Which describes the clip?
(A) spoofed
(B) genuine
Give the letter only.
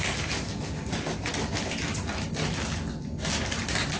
B